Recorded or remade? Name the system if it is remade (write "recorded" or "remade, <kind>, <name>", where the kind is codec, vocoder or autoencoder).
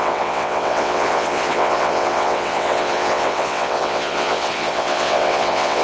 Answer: remade, vocoder, WaveNeXt